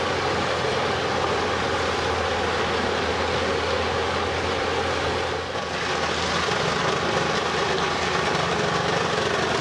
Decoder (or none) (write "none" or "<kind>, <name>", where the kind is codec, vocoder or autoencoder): none